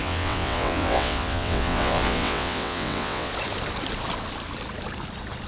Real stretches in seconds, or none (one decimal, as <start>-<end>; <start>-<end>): 3.3-5.5